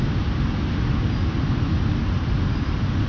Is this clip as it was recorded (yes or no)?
yes